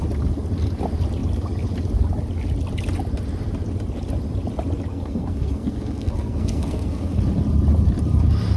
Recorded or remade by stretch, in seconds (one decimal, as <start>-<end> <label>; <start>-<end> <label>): 0.0-4.9 recorded; 4.9-7.2 remade; 7.2-8.6 recorded